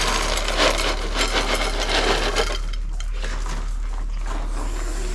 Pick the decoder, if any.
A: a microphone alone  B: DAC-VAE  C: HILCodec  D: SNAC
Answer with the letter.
A